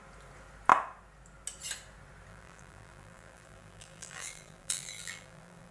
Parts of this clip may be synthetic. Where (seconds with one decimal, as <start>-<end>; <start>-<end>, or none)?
2.3-5.7